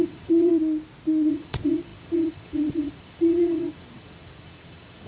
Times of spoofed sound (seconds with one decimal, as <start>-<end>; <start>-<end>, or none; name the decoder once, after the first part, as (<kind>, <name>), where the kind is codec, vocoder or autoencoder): 0.0-0.5 (vocoder, Vocos); 1.3-5.1